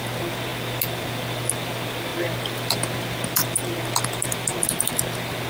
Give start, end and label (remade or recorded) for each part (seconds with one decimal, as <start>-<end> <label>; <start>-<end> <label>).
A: 0.0-5.5 recorded